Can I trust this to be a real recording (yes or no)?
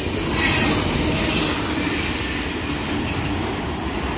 yes